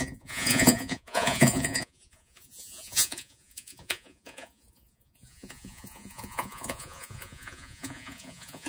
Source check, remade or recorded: remade